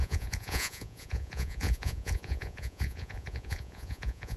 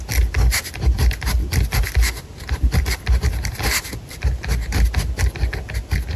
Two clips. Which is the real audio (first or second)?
second